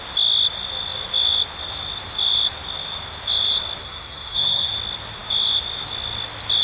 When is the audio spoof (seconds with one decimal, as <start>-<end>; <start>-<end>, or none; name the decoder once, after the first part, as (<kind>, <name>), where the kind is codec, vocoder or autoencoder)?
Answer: 3.8-4.7 (codec, SNAC)